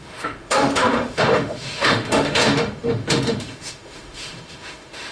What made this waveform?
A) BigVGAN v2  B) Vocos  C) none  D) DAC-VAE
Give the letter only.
D